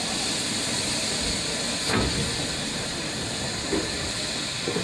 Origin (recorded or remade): recorded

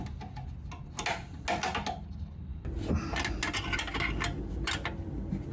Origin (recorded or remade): recorded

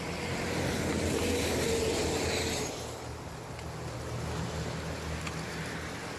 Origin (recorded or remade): recorded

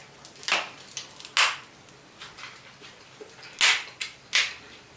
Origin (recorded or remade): recorded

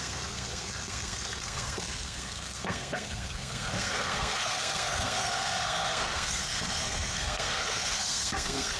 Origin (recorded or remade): remade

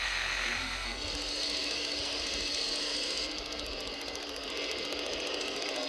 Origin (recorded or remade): remade